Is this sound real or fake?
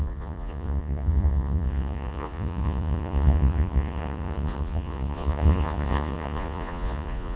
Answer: fake